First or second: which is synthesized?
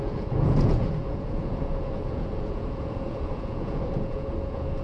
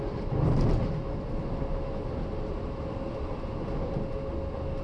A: first